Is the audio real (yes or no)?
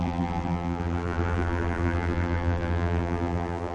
no